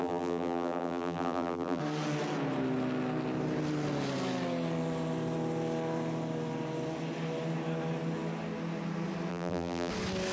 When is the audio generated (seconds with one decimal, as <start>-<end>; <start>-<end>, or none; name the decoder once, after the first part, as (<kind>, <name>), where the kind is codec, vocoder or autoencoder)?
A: 0.0-1.8 (vocoder, BigVGAN v2); 9.3-9.9